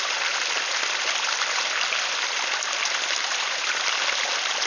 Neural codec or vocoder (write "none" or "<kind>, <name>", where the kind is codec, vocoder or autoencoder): none